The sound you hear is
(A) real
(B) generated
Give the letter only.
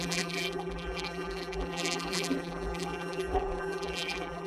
B